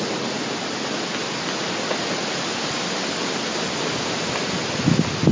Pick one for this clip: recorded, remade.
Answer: recorded